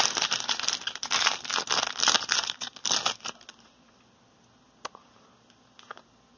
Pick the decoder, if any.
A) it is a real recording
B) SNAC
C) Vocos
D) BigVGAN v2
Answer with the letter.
A